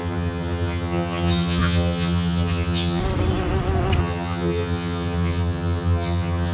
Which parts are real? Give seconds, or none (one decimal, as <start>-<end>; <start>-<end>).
3.0-4.0